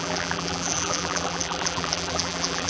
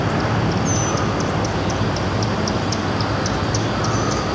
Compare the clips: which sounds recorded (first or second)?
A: second